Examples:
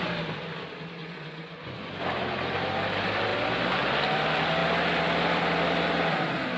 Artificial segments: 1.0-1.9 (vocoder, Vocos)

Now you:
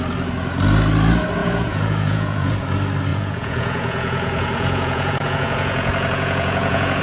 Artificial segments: 1.4-2.7 (vocoder, Vocos); 3.1-7.0

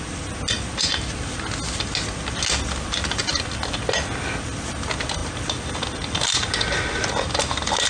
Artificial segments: none

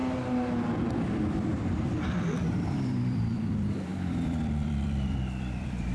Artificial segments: 1.0-5.9 (vocoder, BigVGAN v2)

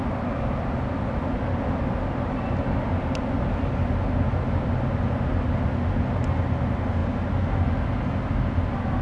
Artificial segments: none

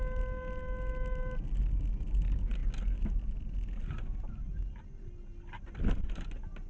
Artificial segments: none

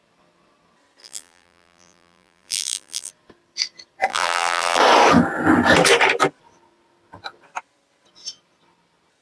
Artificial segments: 1.0-3.1 (vocoder, BigVGAN v2); 4.1-4.8

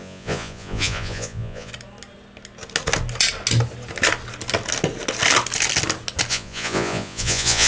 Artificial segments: 0.0-1.7 (vocoder, Vocos); 6.3-7.7